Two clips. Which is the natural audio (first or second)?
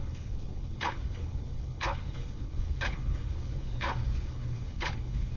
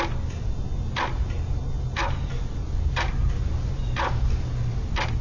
second